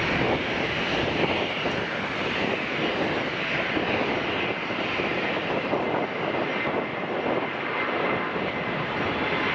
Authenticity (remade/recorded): recorded